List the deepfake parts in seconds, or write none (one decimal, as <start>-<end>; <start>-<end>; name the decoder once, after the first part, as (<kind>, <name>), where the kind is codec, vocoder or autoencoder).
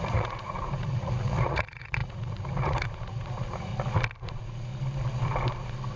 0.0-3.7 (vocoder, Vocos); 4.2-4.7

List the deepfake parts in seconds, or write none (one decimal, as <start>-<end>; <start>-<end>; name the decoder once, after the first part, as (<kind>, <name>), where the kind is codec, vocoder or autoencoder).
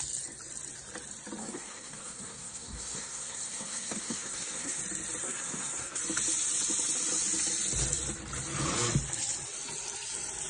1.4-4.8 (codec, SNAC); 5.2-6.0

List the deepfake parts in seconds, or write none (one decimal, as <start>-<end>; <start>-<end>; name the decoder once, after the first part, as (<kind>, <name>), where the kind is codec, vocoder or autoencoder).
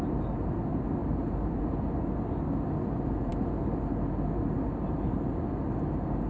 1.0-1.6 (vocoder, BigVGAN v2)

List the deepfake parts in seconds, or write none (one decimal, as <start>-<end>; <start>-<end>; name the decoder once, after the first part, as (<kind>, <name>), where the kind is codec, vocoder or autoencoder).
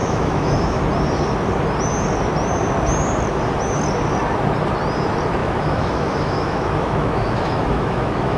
0.0-0.8 (autoencoder, DAC-VAE); 5.4-8.4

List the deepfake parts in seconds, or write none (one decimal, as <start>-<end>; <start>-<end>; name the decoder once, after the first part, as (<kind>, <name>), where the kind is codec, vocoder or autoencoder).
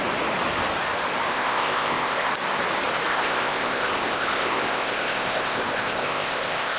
1.3-2.3 (codec, ZipCodec); 3.1-6.8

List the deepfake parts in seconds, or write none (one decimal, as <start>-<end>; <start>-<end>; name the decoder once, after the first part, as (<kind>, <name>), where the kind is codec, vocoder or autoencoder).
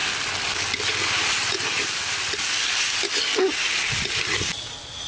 none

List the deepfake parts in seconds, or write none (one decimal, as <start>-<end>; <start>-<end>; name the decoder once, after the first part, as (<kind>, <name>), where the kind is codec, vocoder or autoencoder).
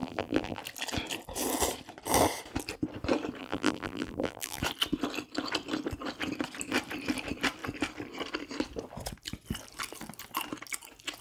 0.0-0.6 (vocoder, BigVGAN v2); 3.4-4.6